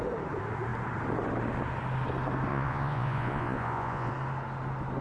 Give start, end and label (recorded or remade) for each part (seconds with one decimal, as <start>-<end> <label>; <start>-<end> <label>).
0.0-2.5 recorded; 2.5-4.1 remade; 4.1-5.0 recorded